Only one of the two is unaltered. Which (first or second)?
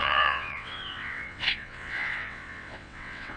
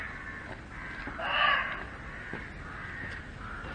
second